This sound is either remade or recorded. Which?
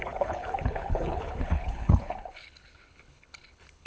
remade